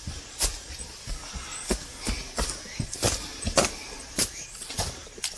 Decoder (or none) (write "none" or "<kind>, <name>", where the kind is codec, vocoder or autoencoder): none